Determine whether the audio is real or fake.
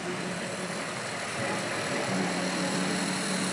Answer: fake